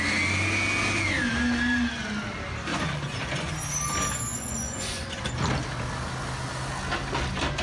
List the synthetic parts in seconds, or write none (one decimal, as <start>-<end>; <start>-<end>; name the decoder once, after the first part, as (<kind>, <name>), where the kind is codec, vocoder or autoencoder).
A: 2.7-3.5 (vocoder, Vocos); 4.3-5.2